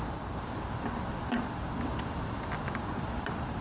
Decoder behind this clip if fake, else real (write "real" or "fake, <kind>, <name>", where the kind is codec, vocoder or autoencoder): real